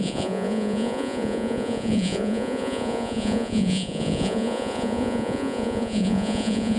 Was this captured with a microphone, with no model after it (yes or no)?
no